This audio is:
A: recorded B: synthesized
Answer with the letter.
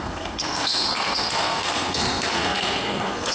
B